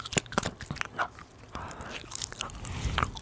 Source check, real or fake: real